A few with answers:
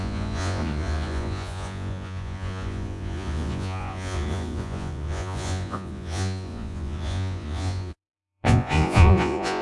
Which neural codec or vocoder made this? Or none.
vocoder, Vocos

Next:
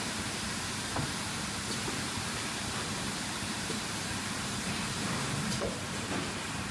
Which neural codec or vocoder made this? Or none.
vocoder, BigVGAN v2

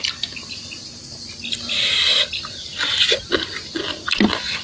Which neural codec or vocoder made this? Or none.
none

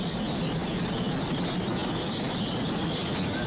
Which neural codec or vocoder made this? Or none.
none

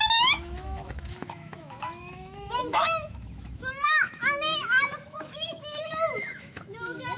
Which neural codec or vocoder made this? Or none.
autoencoder, DAC-VAE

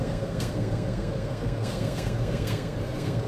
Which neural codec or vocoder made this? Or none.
codec, SNAC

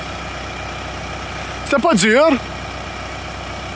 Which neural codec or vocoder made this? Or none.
none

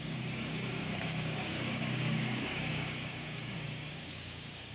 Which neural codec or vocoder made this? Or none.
codec, DAC